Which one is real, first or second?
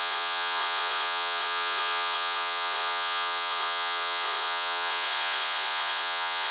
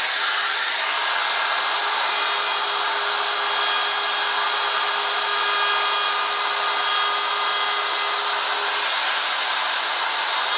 second